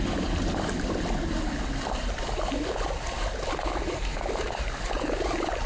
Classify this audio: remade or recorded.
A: recorded